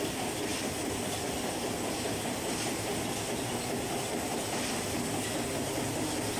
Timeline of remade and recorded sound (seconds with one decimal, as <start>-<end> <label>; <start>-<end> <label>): 0.0-6.4 recorded